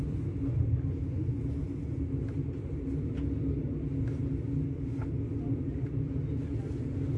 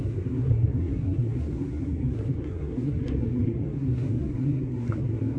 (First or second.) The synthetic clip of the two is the second